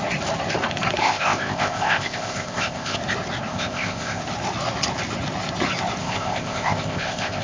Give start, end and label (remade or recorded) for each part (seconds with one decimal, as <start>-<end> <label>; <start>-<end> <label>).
0.0-1.0 recorded; 1.0-3.0 remade; 3.0-3.5 recorded; 3.5-4.2 remade; 4.2-6.0 recorded; 6.0-7.4 remade